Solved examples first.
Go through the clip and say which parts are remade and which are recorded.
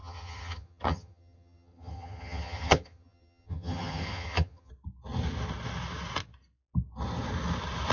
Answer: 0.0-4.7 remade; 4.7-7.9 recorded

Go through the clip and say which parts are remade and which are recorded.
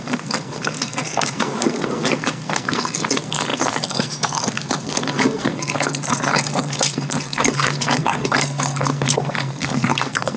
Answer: 0.0-10.4 remade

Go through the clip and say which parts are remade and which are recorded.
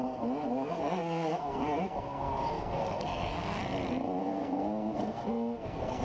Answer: 0.0-3.6 remade; 3.6-4.2 recorded; 4.2-6.0 remade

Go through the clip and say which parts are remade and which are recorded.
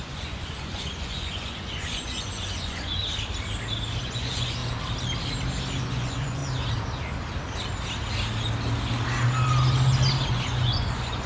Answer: 0.0-3.0 remade; 3.0-4.0 recorded; 4.0-4.6 remade; 4.6-5.8 recorded; 5.8-6.4 remade; 6.4-10.3 recorded; 10.3-11.3 remade